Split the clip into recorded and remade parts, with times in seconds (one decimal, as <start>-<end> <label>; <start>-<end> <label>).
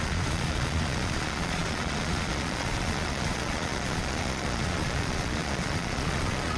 0.0-6.6 remade